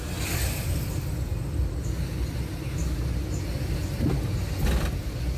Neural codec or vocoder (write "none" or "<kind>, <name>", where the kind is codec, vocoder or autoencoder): none